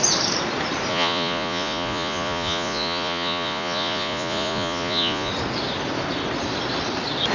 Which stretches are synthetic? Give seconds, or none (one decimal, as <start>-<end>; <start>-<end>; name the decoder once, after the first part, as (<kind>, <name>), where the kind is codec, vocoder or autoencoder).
0.9-5.3 (vocoder, Vocos)